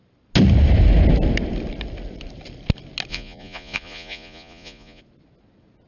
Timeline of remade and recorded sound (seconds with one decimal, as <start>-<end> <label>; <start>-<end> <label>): 0.0-3.1 recorded; 3.1-5.0 remade; 5.0-5.9 recorded